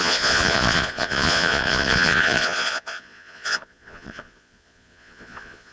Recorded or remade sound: remade